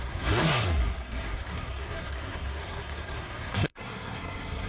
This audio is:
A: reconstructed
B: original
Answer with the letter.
A